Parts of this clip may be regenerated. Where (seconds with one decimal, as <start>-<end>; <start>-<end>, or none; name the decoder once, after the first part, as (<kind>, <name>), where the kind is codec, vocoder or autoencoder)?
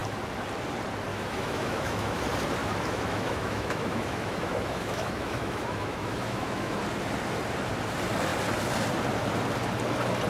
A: 1.1-2.2 (autoencoder, DAC-VAE); 2.6-6.8